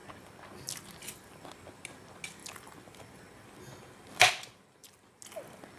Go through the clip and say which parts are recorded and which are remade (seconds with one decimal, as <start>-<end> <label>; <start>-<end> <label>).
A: 0.0-5.8 recorded